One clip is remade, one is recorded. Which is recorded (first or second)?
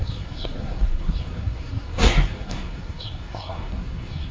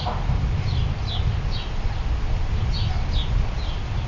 second